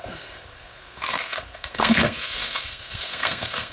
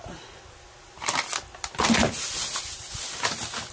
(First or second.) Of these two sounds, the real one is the second